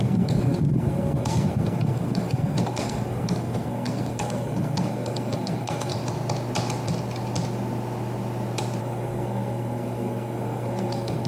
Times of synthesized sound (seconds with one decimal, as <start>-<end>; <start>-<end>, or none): 0.0-5.9; 8.8-11.3

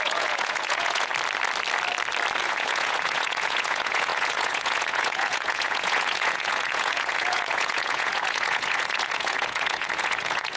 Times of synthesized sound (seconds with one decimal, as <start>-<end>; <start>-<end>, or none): 0.0-1.1; 2.4-10.6

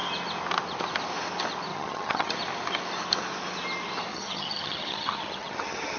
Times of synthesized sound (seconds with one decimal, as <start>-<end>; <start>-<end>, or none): 1.7-2.3; 4.1-6.0

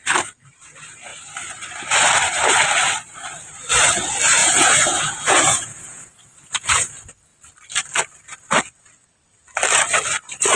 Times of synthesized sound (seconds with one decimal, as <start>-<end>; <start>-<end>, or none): 4.4-6.7

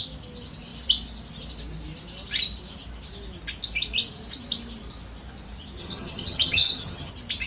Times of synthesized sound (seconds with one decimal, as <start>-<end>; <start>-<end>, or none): 5.8-7.1

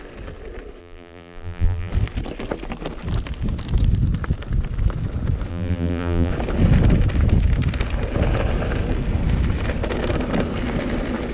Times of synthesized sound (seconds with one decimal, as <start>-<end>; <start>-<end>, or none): 0.8-1.9; 5.5-6.3

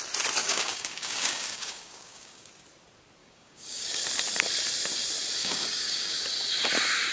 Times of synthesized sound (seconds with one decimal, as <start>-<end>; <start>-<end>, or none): 0.4-2.5; 3.2-4.0; 5.4-6.2